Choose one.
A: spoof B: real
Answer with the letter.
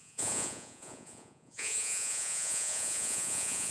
A